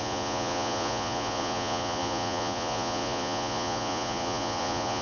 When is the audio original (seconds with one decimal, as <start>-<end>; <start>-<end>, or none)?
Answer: none